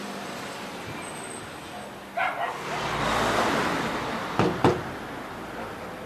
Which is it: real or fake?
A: real